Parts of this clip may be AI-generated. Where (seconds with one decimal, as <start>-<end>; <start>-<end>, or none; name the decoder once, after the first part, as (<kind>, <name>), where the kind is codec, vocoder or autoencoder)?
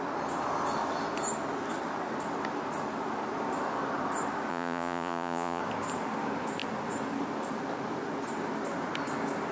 4.5-5.6 (vocoder, Vocos)